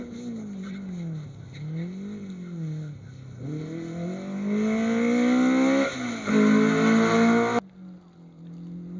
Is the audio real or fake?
real